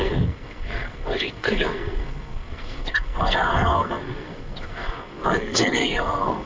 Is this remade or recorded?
remade